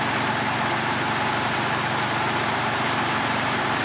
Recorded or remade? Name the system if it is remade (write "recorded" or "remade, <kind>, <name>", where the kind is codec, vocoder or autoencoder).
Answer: remade, vocoder, BigVGAN v2